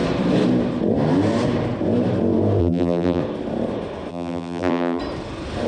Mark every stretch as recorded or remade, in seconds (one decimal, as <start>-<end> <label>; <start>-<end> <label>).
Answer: 0.0-2.6 recorded; 2.6-3.2 remade; 3.2-4.1 recorded; 4.1-5.0 remade; 5.0-5.7 recorded